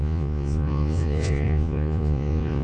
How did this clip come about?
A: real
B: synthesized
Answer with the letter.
B